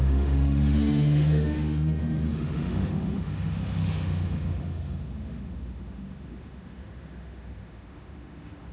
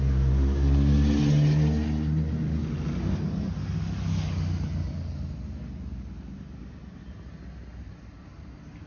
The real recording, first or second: second